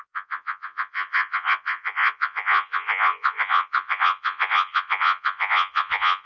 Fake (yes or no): yes